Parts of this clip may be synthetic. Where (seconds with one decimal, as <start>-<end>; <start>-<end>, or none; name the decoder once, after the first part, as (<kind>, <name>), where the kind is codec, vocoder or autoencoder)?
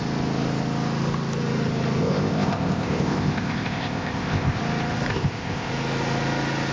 2.0-4.6 (codec, ZipCodec); 5.1-5.7